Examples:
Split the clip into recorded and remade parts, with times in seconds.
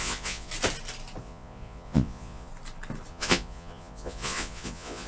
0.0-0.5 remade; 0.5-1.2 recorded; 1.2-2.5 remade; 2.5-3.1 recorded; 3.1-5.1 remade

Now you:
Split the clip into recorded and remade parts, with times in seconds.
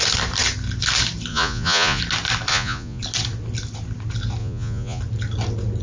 0.0-1.3 recorded; 1.3-2.0 remade; 2.0-2.5 recorded; 2.5-3.0 remade; 3.0-4.4 recorded; 4.4-5.0 remade; 5.0-5.8 recorded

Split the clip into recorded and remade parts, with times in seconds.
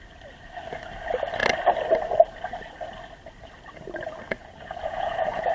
0.0-4.4 recorded; 4.4-5.5 remade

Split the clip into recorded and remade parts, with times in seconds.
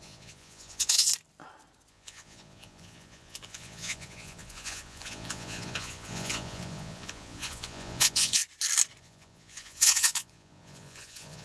0.0-1.1 remade; 1.1-1.9 recorded; 1.9-8.4 remade; 8.4-9.0 recorded; 9.0-11.4 remade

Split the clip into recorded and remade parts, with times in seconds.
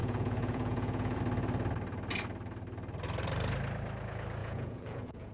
0.0-1.2 remade; 1.2-4.4 recorded; 4.4-5.3 remade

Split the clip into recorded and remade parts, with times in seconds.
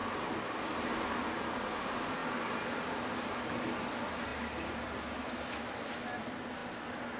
0.0-7.2 recorded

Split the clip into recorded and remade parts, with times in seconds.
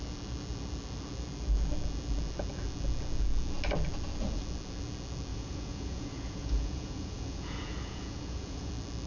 0.0-5.3 recorded; 5.3-8.7 remade; 8.7-9.1 recorded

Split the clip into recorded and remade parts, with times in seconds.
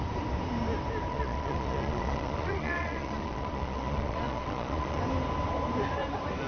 0.0-1.1 recorded; 1.1-5.0 remade; 5.0-6.5 recorded